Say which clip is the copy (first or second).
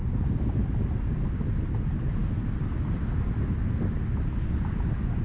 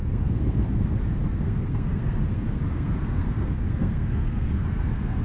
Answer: second